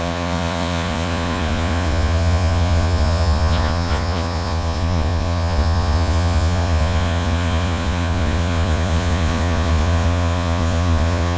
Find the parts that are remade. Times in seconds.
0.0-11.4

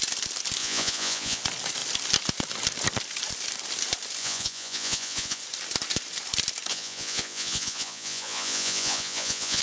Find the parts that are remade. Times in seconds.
0.6-1.4; 4.2-5.4; 6.7-9.6

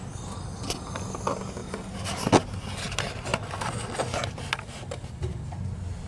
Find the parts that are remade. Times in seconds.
none